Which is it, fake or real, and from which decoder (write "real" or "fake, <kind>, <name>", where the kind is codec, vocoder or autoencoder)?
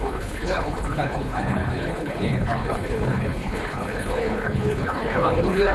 fake, codec, HILCodec